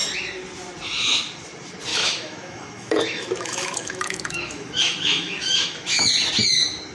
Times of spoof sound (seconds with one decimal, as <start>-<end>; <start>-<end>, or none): 1.9-6.0